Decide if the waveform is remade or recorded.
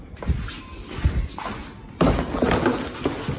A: recorded